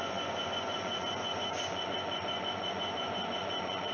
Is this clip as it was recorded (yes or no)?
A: no